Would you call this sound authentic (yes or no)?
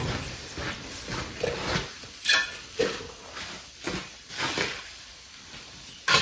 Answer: yes